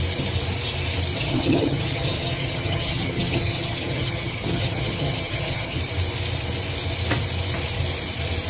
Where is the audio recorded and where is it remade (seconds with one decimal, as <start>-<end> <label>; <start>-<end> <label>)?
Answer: 0.0-1.2 recorded; 1.2-5.8 remade; 5.8-8.5 recorded